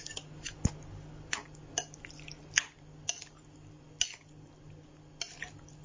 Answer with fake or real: real